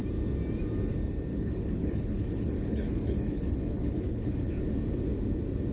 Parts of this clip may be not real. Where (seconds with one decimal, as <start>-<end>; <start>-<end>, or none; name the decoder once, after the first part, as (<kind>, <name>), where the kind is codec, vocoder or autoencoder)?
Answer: 1.3-4.5 (codec, HILCodec)